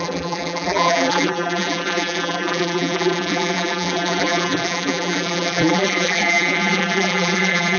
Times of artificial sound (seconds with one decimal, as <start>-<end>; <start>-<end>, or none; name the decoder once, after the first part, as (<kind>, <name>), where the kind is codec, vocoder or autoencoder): 0.0-7.8 (vocoder, BigVGAN v2)